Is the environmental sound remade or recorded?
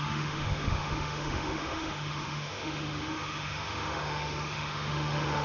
remade